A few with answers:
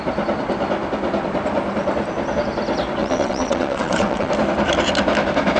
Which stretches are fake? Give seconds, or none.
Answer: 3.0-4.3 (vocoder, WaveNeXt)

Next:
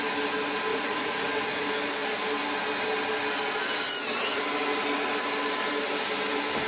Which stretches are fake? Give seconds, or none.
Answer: 0.7-1.3 (vocoder, Vocos)

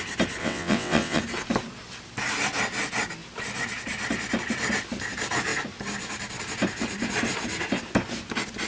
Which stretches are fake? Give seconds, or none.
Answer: 0.4-1.2 (vocoder, WaveNeXt)